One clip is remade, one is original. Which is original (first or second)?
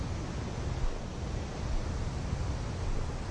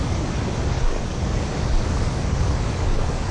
first